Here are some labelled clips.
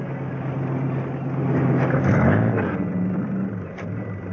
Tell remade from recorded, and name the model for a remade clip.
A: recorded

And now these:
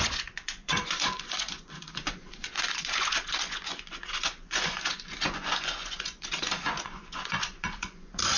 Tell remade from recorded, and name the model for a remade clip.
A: remade, vocoder, Vocos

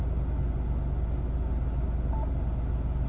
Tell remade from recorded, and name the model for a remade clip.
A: recorded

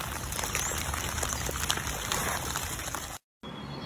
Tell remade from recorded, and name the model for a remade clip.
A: recorded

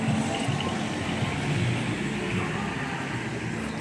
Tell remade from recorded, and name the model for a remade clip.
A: recorded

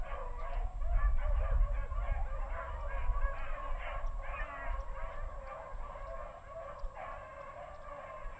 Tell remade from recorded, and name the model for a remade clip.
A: recorded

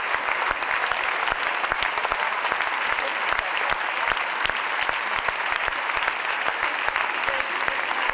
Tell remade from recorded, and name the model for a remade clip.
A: recorded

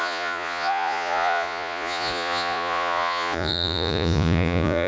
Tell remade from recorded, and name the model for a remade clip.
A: remade, vocoder, Vocos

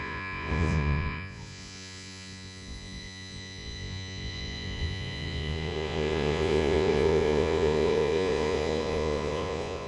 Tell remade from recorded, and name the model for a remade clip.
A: remade, vocoder, Vocos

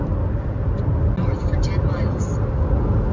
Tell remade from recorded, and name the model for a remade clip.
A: recorded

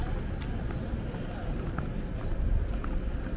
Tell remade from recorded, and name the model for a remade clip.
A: recorded